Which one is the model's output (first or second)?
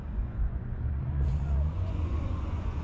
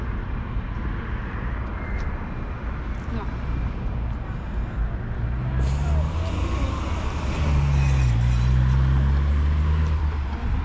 first